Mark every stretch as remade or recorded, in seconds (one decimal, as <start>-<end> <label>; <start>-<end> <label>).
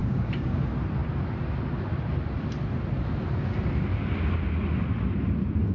0.0-0.6 remade; 0.6-5.7 recorded